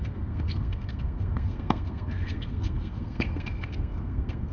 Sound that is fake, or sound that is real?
fake